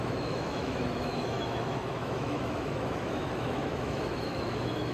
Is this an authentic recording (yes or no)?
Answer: no